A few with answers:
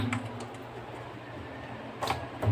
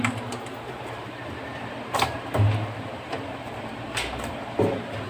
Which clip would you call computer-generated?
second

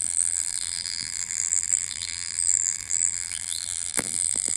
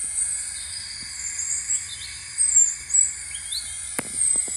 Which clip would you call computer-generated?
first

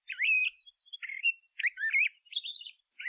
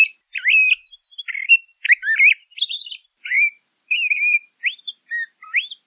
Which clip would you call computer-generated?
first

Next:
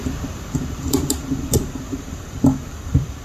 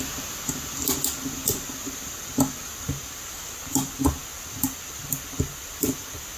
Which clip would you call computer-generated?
first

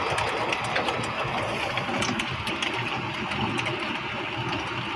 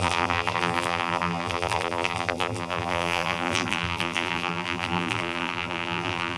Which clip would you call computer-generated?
second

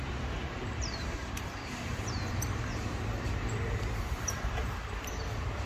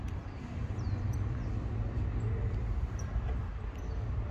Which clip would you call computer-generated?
first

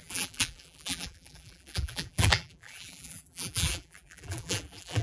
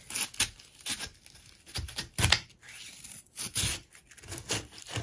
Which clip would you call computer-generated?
first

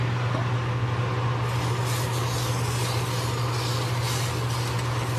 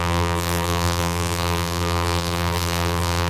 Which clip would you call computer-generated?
second